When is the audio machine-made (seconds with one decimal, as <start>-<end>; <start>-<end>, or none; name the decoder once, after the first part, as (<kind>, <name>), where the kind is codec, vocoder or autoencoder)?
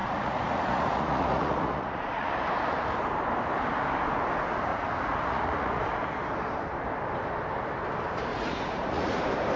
0.0-2.3 (vocoder, Vocos); 4.7-5.8; 8.3-9.2